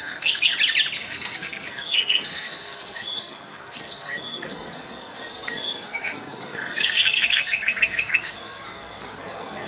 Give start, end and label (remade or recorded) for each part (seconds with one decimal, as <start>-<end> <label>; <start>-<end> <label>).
0.0-0.5 remade; 0.5-1.0 recorded; 1.0-9.7 remade